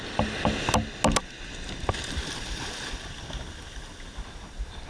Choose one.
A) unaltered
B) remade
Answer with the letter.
A